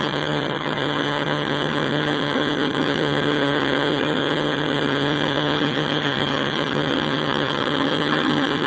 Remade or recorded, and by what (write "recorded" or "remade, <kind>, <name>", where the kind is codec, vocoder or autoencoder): remade, vocoder, HiFi-GAN